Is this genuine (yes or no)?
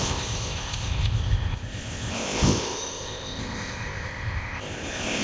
no